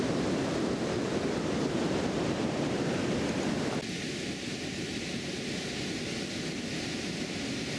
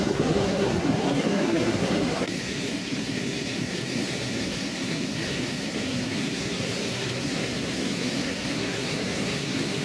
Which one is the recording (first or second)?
first